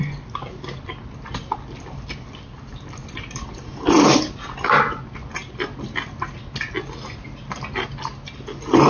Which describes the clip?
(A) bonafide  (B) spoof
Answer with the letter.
A